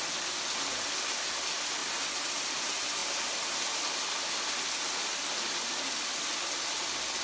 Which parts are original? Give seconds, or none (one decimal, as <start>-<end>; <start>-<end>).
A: 0.0-7.2